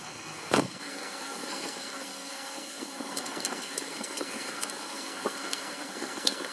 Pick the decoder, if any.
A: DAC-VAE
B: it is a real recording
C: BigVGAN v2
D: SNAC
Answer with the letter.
D